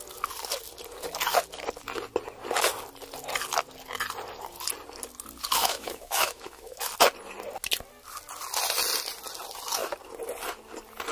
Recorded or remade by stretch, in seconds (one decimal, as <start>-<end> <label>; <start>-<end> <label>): 0.0-5.6 recorded; 5.6-6.8 remade; 6.8-11.1 recorded